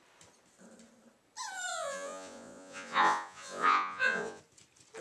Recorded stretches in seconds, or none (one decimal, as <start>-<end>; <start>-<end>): 0.0-1.7; 4.4-5.0